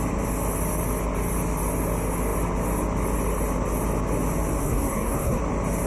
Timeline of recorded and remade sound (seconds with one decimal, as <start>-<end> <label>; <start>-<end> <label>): 0.0-4.6 recorded; 4.6-5.4 remade; 5.4-5.9 recorded